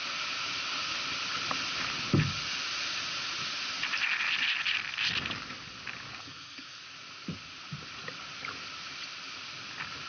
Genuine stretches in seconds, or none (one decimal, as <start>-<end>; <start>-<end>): 0.0-6.2; 6.8-10.1